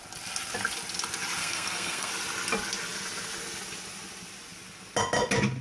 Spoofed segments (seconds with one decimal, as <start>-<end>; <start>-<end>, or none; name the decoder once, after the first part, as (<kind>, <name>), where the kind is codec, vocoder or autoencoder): 1.4-2.1 (codec, SNAC)